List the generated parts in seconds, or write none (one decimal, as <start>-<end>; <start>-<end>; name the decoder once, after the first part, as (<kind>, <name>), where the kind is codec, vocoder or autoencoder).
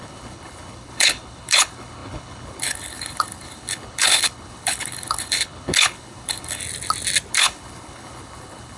0.0-6.6 (codec, HILCodec); 7.3-8.8